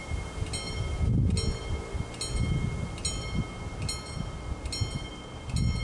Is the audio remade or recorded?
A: recorded